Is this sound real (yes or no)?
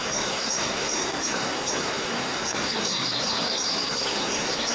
no